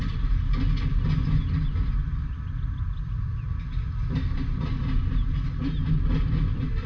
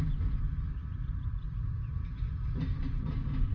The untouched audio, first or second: first